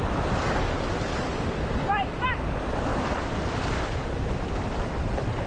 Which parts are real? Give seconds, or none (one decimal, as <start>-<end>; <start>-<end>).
0.0-1.1; 1.7-2.9; 4.4-5.5